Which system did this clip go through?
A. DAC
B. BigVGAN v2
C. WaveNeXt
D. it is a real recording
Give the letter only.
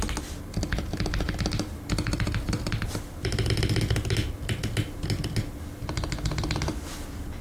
D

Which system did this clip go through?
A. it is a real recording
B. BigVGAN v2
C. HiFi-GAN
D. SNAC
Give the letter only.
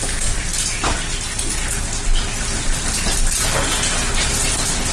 A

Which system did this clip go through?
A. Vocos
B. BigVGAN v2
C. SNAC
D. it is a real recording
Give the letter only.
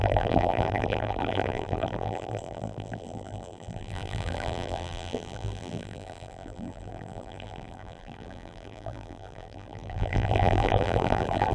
B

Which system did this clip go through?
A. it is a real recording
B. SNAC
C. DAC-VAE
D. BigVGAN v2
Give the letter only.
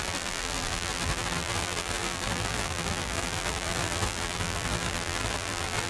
D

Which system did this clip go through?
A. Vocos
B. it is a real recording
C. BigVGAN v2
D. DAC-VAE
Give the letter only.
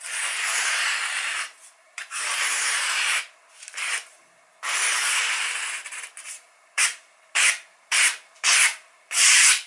C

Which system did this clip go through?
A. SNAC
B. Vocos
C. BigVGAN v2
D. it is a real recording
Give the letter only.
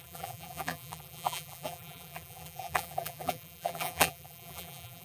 C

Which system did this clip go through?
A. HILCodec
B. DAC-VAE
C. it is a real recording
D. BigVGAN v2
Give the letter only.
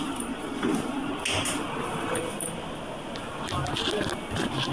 C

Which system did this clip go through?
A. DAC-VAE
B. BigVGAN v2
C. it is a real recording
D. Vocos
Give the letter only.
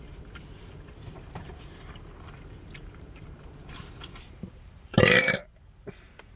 B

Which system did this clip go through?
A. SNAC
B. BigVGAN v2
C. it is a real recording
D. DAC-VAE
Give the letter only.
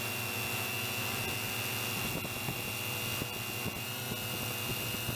C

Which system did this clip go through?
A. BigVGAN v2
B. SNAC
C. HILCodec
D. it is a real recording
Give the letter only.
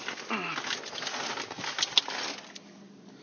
D